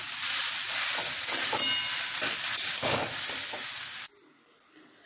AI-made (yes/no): no